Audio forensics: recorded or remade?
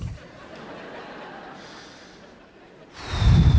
recorded